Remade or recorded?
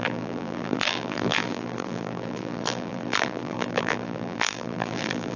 remade